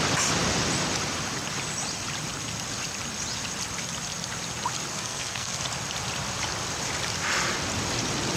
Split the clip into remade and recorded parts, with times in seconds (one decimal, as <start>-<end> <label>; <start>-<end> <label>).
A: 0.0-4.9 recorded; 4.9-5.6 remade; 5.6-8.4 recorded